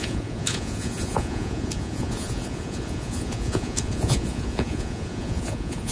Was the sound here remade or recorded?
remade